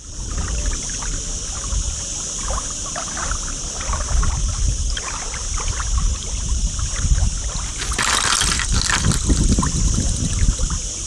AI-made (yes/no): no